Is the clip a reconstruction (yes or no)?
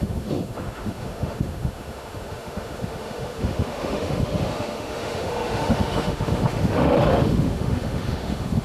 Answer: yes